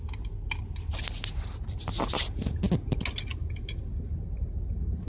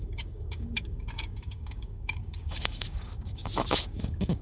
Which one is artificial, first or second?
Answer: second